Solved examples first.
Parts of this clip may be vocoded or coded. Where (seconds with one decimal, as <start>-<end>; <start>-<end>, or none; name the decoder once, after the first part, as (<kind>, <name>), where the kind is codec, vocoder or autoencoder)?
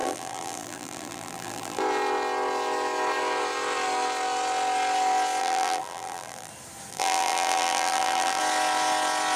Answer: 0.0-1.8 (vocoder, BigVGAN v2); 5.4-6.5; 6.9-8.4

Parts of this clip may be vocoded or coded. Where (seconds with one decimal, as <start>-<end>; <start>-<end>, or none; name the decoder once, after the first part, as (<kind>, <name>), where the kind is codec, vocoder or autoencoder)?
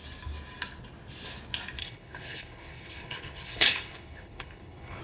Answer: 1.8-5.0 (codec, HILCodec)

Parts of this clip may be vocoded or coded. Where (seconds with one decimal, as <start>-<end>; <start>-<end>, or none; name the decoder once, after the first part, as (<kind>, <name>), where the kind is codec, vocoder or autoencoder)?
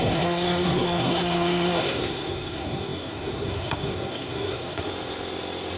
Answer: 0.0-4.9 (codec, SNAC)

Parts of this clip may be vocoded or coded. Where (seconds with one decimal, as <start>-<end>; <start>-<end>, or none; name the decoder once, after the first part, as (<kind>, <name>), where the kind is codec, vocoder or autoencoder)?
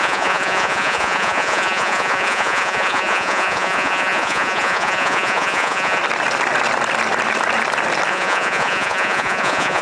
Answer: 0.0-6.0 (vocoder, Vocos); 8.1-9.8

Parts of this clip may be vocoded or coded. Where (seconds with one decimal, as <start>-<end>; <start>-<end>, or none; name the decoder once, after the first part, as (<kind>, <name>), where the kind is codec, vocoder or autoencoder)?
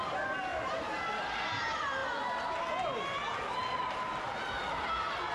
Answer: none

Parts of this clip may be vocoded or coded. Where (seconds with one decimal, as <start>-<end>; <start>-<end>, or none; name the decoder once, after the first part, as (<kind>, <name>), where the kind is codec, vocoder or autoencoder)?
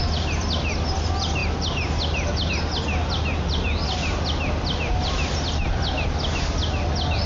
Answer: none